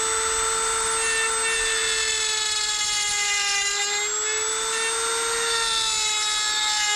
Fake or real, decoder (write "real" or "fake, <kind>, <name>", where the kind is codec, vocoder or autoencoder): real